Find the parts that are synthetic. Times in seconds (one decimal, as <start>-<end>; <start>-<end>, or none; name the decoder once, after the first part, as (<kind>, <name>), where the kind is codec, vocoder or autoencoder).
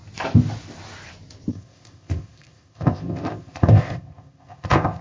1.5-5.0 (codec, ZipCodec)